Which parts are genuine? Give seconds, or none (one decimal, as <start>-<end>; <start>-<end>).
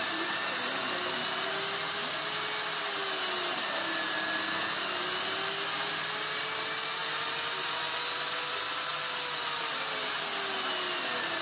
0.0-11.4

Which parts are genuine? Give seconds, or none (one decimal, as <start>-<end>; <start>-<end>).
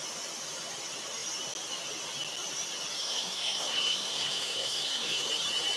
0.0-3.0; 5.3-5.8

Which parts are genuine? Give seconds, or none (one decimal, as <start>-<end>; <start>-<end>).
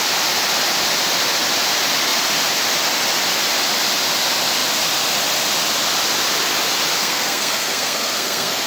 0.0-7.0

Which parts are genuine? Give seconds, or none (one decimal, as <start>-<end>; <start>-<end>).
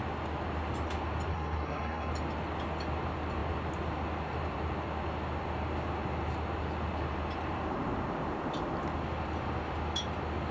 0.0-1.3; 2.1-10.5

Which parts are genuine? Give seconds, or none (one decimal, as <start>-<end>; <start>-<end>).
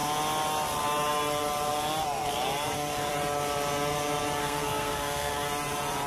0.0-4.4; 5.3-6.1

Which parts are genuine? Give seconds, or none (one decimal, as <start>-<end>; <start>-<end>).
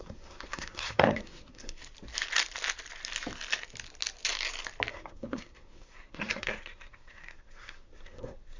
1.8-4.9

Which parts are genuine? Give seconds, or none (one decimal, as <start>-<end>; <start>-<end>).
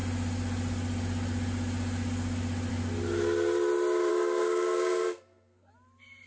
0.0-4.1; 5.7-6.3